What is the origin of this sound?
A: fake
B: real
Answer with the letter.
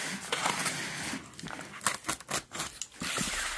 B